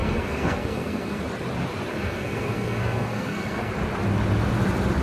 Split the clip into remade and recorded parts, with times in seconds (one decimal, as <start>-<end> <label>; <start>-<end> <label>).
0.0-1.2 remade; 1.2-1.9 recorded; 1.9-3.7 remade; 3.7-5.0 recorded